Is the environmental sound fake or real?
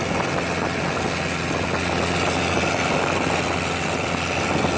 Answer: real